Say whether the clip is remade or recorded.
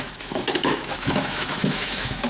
remade